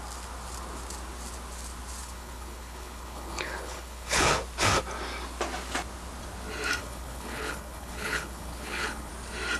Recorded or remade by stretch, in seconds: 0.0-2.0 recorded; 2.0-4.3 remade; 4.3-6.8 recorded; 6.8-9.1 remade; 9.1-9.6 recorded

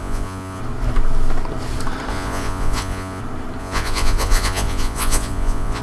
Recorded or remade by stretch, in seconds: 0.0-0.6 remade; 0.6-2.1 recorded; 2.1-3.2 remade; 3.2-3.6 recorded; 3.6-5.8 remade

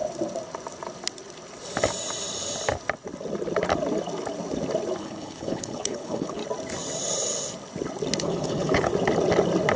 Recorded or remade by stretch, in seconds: 0.0-5.0 recorded; 5.0-6.4 remade; 6.4-8.2 recorded; 8.2-8.9 remade; 8.9-9.8 recorded

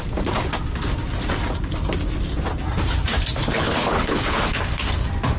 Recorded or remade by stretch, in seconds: 0.0-3.4 recorded; 3.4-4.8 remade; 4.8-5.4 recorded

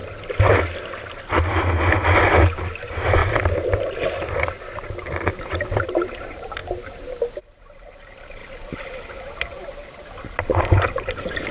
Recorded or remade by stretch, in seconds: 0.0-2.8 recorded; 2.8-3.2 remade; 3.2-5.3 recorded; 5.3-6.6 remade; 6.6-7.4 recorded; 7.4-8.4 remade; 8.4-10.6 recorded; 10.6-11.5 remade

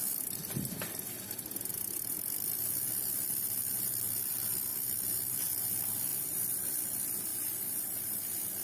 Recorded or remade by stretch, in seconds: 0.0-6.1 recorded; 6.1-6.7 remade; 6.7-7.3 recorded; 7.3-8.2 remade; 8.2-8.6 recorded